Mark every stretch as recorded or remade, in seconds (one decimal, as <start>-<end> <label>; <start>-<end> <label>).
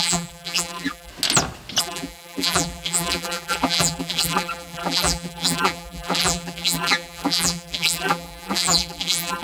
0.0-1.1 remade; 1.1-1.8 recorded; 1.8-9.4 remade